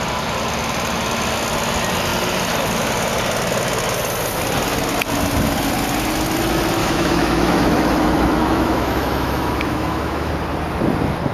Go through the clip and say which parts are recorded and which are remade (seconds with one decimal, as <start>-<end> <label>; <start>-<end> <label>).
0.0-6.8 recorded; 6.8-10.3 remade; 10.3-11.3 recorded